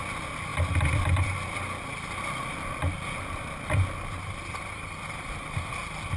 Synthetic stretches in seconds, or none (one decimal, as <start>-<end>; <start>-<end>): none